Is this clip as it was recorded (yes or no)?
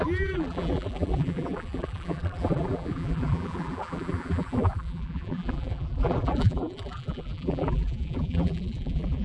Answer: no